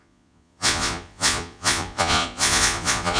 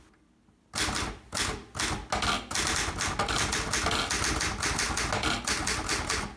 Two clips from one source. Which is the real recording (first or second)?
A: second